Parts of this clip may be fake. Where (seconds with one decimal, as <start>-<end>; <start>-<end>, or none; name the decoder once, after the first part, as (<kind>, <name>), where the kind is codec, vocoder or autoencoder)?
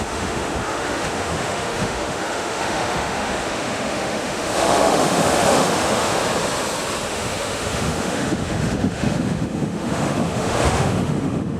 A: 0.0-6.2 (autoencoder, DAC-VAE); 7.1-11.6